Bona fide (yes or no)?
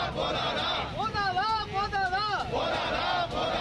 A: yes